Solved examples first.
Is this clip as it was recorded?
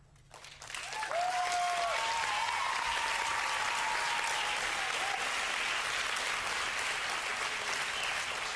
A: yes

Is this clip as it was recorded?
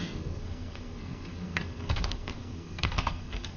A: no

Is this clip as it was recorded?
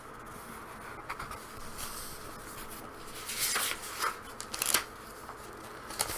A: yes